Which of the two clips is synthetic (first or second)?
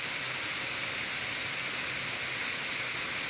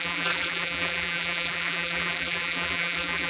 second